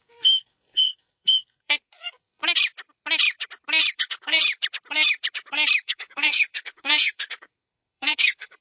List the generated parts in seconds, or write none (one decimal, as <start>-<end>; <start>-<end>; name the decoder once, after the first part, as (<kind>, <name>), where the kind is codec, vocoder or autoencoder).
0.0-2.4 (codec, SNAC); 3.9-4.4; 5.8-8.6